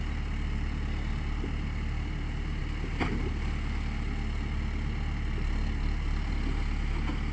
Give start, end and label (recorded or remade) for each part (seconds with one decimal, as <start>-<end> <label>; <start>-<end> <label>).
0.0-7.3 recorded

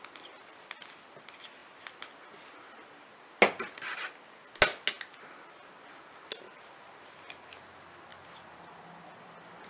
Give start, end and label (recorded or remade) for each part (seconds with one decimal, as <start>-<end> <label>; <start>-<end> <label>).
0.0-9.7 recorded

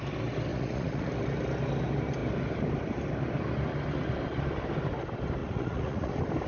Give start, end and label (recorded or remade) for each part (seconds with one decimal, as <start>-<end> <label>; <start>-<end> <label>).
0.0-0.5 recorded; 0.5-1.1 remade; 1.1-5.4 recorded; 5.4-6.1 remade; 6.1-6.5 recorded

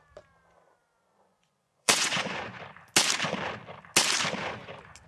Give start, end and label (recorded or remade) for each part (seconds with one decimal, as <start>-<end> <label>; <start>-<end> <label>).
0.0-0.8 recorded; 0.8-2.6 remade; 2.6-5.1 recorded

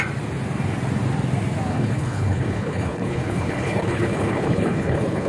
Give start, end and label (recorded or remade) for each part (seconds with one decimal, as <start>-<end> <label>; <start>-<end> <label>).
0.0-1.7 recorded; 1.7-5.3 remade

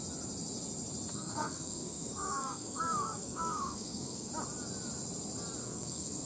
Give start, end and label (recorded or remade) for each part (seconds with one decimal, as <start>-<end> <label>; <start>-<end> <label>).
0.0-1.1 recorded; 1.1-4.3 remade; 4.3-5.6 recorded; 5.6-6.3 remade

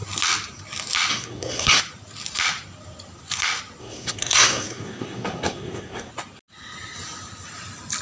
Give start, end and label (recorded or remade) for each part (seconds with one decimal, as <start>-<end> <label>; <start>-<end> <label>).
0.0-1.1 recorded; 1.1-1.8 remade; 1.8-3.8 recorded; 3.8-6.1 remade; 6.1-8.0 recorded

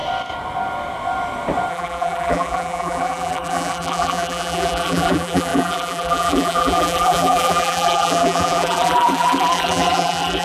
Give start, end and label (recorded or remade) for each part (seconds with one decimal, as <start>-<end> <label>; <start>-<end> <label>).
0.0-1.7 recorded; 1.7-10.4 remade